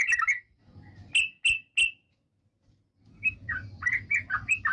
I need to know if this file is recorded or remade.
recorded